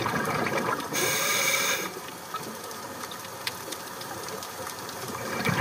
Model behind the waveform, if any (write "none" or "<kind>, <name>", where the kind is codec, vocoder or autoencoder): vocoder, BigVGAN v2